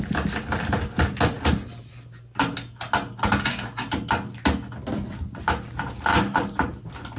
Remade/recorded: recorded